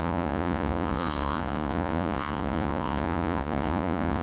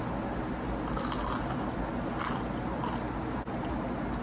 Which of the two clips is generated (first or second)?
first